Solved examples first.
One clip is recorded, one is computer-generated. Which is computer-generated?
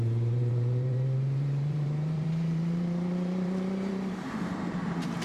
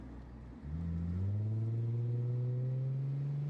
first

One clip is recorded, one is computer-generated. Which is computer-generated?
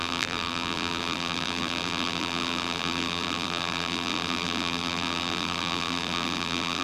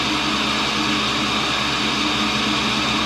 first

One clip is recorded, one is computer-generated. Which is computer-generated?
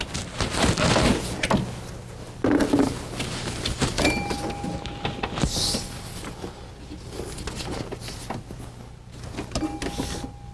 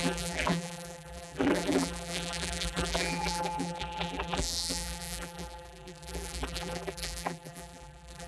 second